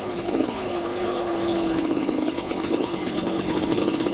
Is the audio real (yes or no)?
no